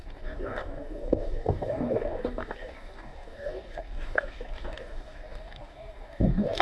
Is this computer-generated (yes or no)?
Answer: yes